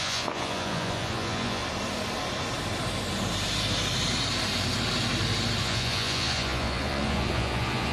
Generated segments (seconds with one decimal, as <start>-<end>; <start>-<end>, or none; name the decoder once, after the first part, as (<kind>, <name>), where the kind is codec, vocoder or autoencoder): 0.0-1.6 (vocoder, Vocos); 5.6-7.9

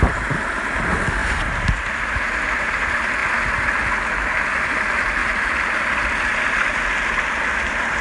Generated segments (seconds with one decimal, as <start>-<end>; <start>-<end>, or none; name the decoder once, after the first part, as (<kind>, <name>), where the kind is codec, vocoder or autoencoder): none

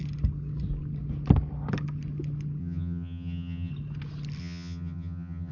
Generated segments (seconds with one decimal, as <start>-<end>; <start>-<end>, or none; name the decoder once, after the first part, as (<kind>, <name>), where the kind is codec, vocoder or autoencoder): 2.6-3.7 (vocoder, HiFi-GAN); 4.4-5.5